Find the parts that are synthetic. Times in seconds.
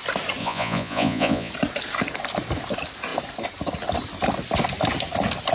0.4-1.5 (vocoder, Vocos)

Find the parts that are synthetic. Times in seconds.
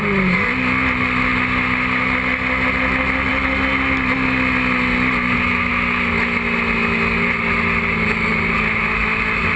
none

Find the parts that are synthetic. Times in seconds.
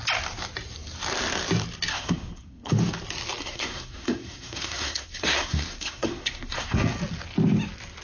1.9-2.7 (codec, SNAC); 3.4-6.8